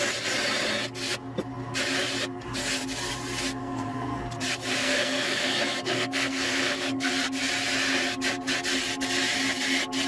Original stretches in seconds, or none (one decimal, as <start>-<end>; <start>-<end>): 0.0-3.6; 4.2-4.8; 7.1-10.1